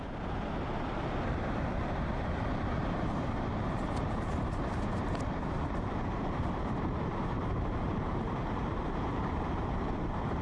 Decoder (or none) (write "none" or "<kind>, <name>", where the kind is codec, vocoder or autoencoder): vocoder, BigVGAN v2